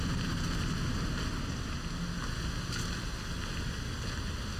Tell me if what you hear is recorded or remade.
recorded